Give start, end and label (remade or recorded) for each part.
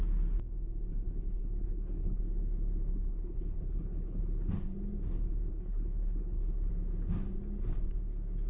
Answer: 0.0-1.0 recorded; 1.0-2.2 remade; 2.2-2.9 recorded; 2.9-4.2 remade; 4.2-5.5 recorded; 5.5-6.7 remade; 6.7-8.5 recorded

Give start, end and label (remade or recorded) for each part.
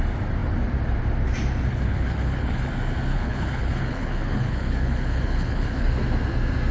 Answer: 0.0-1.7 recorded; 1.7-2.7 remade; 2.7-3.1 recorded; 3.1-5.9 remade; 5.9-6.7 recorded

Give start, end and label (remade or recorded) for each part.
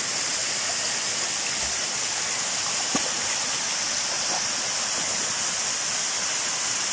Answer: 0.0-6.9 recorded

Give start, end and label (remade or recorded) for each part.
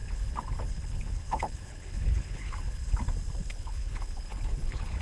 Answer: 0.0-3.0 remade; 3.0-3.4 recorded; 3.4-5.0 remade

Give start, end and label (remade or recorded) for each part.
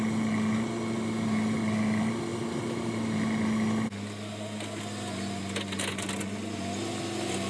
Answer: 0.0-7.5 recorded